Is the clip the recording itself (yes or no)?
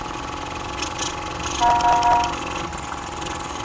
yes